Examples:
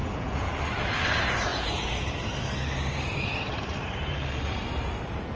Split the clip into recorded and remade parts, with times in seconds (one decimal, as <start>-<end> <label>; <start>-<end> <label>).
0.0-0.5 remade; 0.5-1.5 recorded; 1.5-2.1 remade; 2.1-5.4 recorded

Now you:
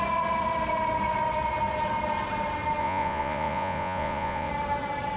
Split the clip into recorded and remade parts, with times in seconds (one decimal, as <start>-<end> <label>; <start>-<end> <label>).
0.0-2.8 recorded; 2.8-4.5 remade; 4.5-5.2 recorded

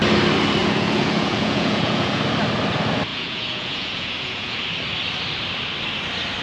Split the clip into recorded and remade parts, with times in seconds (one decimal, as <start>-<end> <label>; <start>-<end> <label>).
0.0-0.6 recorded; 0.6-2.2 remade; 2.2-3.1 recorded; 3.1-4.6 remade; 4.6-6.4 recorded